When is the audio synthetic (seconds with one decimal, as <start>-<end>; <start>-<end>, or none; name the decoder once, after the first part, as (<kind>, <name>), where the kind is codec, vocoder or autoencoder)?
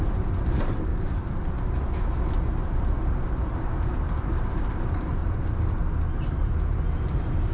0.0-0.9 (vocoder, BigVGAN v2); 4.3-5.2; 7.1-7.5